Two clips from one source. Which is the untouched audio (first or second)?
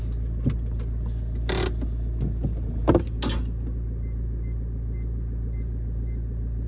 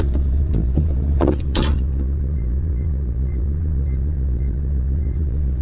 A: first